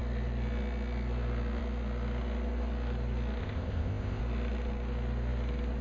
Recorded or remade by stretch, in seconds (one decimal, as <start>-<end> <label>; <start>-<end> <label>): 0.0-3.4 recorded; 3.4-4.2 remade; 4.2-5.8 recorded